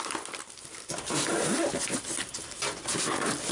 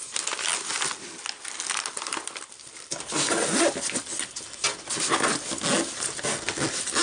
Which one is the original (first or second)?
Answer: second